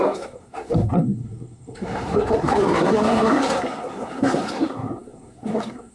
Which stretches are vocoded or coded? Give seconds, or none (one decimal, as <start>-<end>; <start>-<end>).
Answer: 0.0-5.9